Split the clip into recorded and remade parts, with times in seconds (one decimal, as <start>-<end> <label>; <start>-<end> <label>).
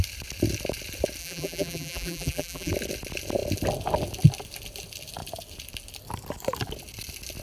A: 0.0-1.2 recorded; 1.2-2.7 remade; 2.7-7.4 recorded